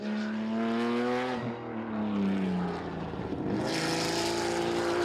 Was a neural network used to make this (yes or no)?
no